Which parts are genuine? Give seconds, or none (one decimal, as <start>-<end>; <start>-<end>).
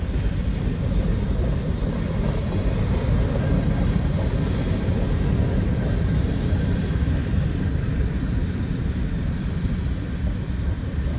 0.0-11.2